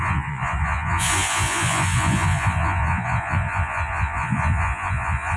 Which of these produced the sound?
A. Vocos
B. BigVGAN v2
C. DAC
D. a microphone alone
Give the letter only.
A